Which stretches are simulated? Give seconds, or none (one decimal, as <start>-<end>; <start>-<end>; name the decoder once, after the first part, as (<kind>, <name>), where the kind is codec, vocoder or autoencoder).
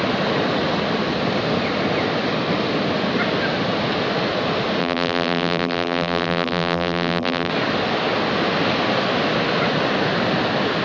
4.8-7.5 (vocoder, BigVGAN v2)